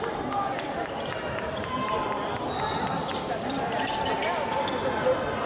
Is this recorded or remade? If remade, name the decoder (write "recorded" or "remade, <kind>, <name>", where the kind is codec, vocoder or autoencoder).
recorded